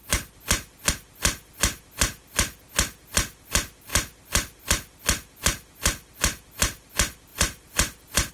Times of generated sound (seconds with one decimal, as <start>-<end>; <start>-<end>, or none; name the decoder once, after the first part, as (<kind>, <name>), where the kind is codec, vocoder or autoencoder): 7.3-8.3 (vocoder, BigVGAN v2)